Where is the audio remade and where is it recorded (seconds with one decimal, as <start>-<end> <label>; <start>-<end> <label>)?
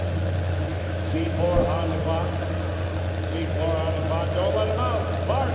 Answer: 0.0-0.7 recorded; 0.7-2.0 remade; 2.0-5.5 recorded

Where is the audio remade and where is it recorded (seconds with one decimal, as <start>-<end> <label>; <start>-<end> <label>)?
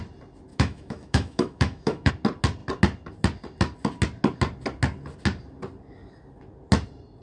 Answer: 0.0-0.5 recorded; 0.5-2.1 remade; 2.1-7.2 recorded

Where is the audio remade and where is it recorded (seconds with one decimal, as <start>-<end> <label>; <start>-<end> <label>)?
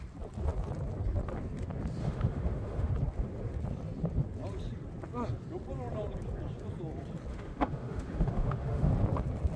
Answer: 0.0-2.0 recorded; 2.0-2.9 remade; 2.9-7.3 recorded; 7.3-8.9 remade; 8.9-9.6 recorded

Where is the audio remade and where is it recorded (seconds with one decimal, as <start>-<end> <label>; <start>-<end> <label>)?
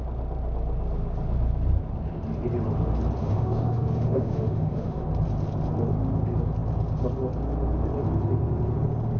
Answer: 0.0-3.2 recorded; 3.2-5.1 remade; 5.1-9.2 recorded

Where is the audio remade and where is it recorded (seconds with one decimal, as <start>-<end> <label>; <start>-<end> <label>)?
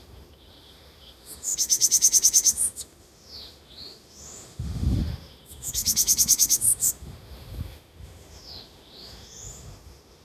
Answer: 0.0-10.2 remade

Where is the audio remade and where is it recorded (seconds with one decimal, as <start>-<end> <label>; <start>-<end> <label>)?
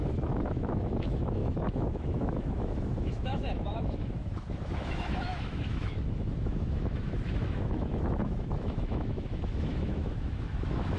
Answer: 0.0-11.0 remade